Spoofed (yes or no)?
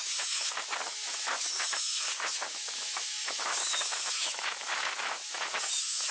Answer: yes